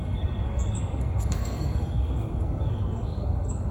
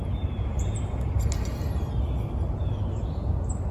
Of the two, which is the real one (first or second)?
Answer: second